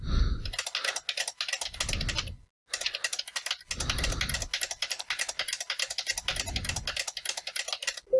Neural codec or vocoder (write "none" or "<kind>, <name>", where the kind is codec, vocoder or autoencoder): none